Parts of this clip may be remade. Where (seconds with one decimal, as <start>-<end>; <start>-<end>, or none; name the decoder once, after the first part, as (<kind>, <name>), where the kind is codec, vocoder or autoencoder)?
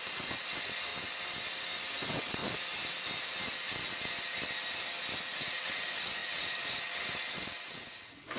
0.0-0.9 (vocoder, WaveNeXt); 1.9-2.4; 5.4-8.4